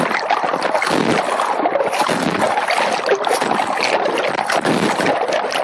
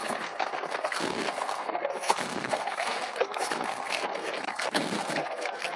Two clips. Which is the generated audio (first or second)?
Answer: second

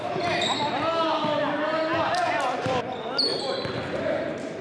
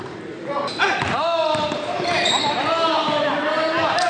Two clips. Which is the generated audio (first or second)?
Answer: second